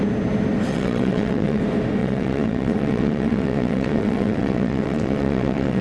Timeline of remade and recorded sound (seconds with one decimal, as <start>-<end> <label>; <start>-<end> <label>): 0.0-0.7 recorded; 0.7-1.6 remade; 1.6-2.0 recorded; 2.0-5.8 remade